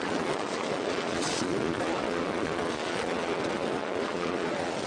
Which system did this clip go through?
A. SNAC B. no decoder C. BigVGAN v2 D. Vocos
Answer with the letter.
D